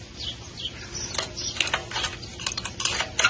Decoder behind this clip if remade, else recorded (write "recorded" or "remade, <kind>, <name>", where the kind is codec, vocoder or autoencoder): recorded